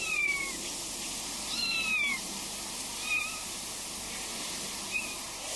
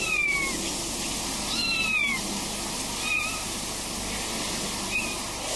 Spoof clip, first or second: first